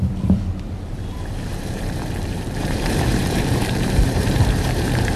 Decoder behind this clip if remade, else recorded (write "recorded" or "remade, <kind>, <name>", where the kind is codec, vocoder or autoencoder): remade, vocoder, BigVGAN v2